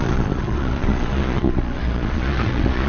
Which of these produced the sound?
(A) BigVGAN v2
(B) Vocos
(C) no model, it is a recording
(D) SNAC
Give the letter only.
B